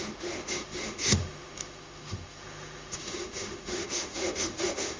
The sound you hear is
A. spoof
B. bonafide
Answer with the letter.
A